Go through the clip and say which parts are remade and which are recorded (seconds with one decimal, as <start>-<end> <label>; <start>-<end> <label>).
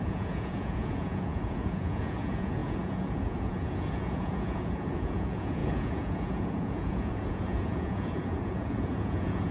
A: 0.0-9.5 remade